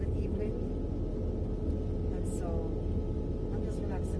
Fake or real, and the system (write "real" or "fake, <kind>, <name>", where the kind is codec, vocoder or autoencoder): real